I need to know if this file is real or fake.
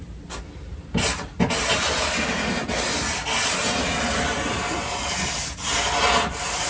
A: real